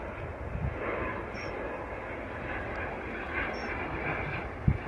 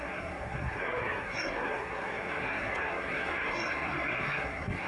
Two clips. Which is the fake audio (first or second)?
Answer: second